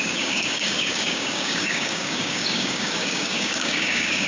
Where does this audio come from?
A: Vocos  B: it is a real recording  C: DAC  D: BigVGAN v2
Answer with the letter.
C